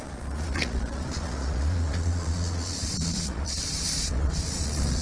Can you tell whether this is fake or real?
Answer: fake